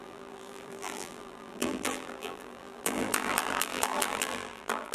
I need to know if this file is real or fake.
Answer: fake